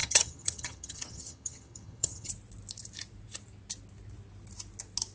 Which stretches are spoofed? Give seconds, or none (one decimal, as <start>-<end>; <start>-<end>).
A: 0.0-2.3